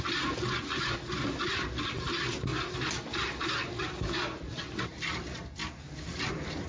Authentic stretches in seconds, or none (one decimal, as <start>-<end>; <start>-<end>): 0.0-6.7